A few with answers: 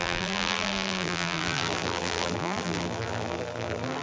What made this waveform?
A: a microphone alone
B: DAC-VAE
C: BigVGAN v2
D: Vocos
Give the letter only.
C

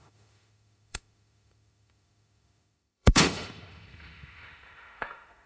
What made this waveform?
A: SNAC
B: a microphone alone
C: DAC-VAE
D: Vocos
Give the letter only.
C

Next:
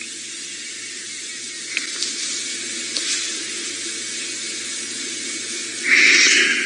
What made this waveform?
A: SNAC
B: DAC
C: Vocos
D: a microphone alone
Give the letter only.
D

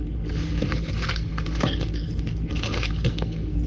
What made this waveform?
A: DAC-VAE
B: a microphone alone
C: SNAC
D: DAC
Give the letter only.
C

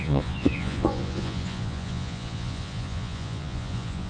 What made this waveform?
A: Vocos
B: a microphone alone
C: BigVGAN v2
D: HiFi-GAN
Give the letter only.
A